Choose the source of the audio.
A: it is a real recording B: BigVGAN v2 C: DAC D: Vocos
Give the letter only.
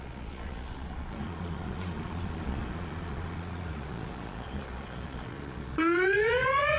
D